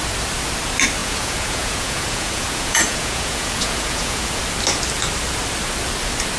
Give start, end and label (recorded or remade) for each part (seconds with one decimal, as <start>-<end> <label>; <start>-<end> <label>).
0.0-1.0 recorded; 1.0-4.4 remade; 4.4-6.4 recorded